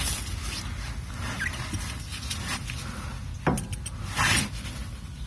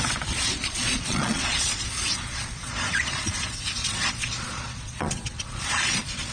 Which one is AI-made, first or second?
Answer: second